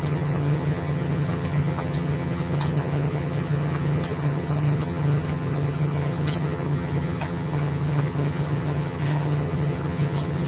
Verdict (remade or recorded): remade